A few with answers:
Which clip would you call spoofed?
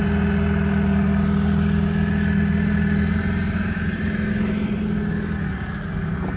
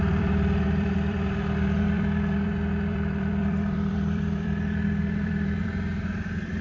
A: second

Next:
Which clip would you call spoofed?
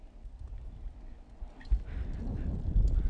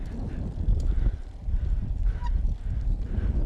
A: second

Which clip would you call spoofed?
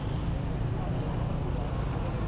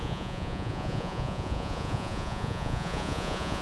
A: second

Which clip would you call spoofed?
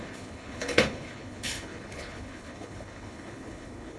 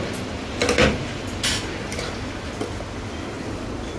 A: first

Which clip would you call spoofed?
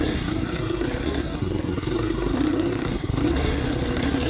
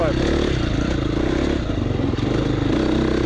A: first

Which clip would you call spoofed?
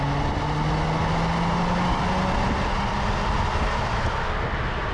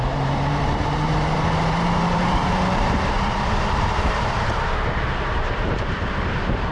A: second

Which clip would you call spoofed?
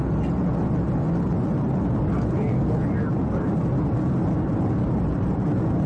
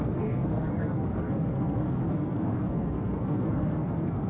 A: second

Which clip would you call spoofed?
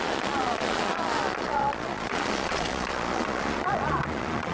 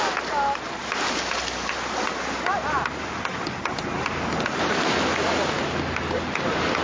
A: first